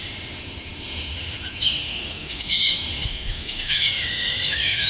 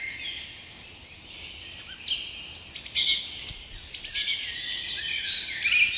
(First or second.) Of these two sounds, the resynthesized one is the first